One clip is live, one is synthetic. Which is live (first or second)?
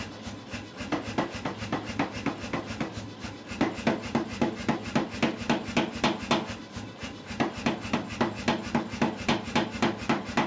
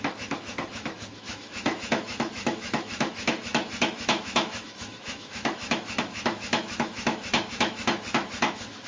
first